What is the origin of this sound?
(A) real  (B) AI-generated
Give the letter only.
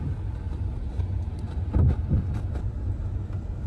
A